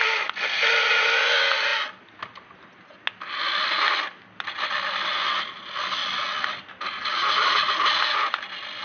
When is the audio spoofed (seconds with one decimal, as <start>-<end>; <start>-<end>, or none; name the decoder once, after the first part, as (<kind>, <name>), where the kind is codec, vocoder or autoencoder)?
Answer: none